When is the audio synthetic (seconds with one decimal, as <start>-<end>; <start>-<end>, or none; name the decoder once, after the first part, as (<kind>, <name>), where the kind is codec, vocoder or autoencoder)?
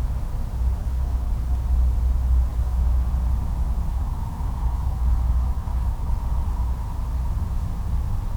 0.8-1.3 (codec, DAC); 2.5-3.1; 3.9-6.1